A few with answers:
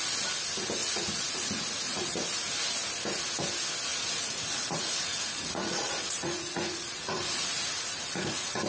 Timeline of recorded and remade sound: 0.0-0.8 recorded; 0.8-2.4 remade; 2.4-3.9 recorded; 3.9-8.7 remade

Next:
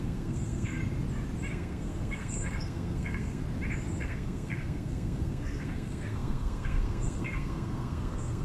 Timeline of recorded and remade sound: 0.0-0.8 remade; 0.8-1.5 recorded; 1.5-3.4 remade; 3.4-4.0 recorded; 4.0-8.4 remade

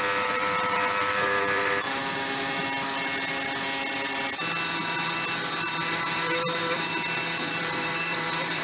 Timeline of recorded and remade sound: 0.0-2.0 remade; 2.0-5.5 recorded; 5.5-6.5 remade; 6.5-7.5 recorded; 7.5-8.6 remade

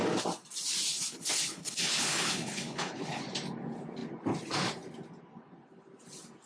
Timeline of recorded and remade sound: 0.0-0.9 recorded; 0.9-3.2 remade; 3.2-6.5 recorded

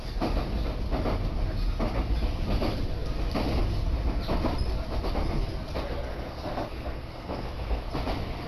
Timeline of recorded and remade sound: 0.0-6.1 recorded; 6.1-7.9 remade; 7.9-8.5 recorded

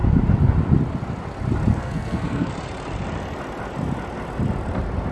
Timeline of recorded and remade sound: 0.0-1.7 recorded; 1.7-2.5 remade; 2.5-5.1 recorded